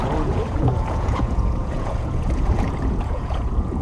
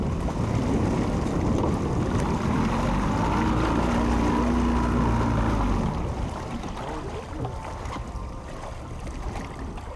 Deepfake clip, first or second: first